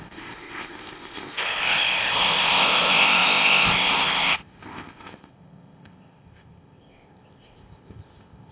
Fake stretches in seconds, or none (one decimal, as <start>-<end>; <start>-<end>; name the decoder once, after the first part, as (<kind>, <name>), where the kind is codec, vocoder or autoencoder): 0.0-8.5 (codec, ZipCodec)